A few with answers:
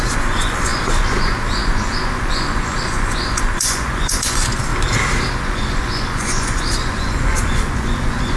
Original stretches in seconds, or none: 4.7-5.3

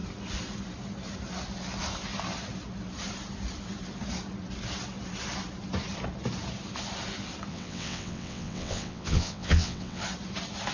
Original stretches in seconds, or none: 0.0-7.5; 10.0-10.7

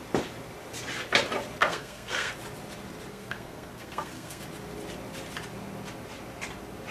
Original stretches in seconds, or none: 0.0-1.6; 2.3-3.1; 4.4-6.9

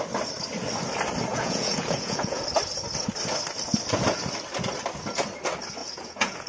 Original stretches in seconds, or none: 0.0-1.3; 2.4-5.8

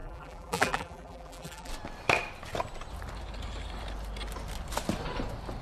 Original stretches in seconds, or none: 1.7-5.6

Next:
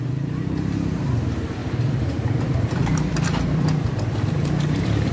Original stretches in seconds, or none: 0.0-1.6

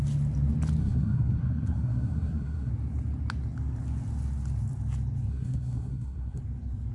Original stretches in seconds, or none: 0.0-0.8; 2.7-5.3; 6.4-6.9